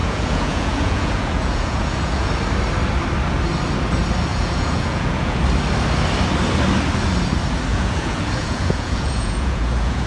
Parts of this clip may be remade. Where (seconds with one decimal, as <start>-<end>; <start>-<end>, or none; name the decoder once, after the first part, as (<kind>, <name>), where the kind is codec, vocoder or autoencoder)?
0.0-2.3 (vocoder, Vocos); 4.3-5.4; 7.7-10.1

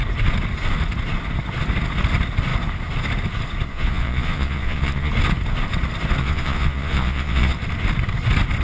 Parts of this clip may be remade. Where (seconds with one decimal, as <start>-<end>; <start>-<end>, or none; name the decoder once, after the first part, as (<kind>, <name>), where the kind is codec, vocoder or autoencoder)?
3.7-5.1 (vocoder, Vocos); 6.2-7.6

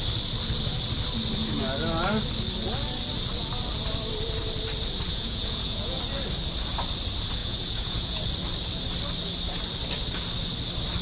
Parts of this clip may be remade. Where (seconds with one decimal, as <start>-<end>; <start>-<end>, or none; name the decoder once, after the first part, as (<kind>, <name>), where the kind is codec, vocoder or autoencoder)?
5.1-6.0 (vocoder, Vocos); 7.4-8.2

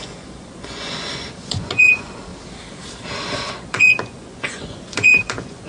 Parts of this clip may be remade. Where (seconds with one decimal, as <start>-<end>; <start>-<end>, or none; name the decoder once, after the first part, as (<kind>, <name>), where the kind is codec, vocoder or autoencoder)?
0.0-2.3 (vocoder, Vocos); 3.2-5.7

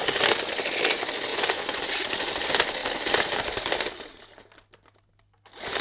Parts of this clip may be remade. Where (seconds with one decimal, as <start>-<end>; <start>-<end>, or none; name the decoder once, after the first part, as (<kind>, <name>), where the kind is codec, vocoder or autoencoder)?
1.3-1.8 (vocoder, Vocos)

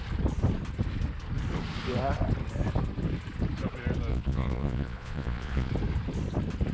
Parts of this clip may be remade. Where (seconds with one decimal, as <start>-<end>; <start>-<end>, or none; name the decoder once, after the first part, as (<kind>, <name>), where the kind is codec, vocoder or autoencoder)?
4.1-5.7 (vocoder, Vocos)

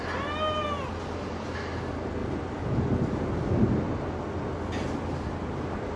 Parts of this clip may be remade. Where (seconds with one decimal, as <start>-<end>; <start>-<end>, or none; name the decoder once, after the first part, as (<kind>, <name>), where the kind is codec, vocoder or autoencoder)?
none

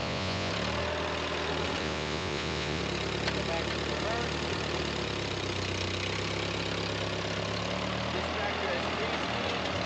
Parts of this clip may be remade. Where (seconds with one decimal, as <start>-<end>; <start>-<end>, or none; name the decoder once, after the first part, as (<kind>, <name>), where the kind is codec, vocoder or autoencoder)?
0.0-0.5 (vocoder, Vocos); 1.8-2.8